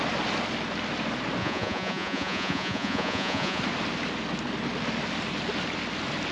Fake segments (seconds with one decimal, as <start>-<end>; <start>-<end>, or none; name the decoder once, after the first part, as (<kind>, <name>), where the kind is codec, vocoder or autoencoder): 1.4-3.6 (vocoder, Vocos)